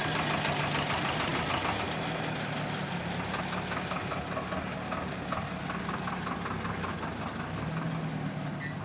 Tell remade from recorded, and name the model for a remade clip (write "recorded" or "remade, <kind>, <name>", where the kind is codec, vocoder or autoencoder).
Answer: recorded